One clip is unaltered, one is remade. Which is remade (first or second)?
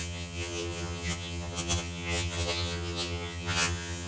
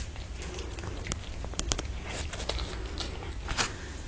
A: first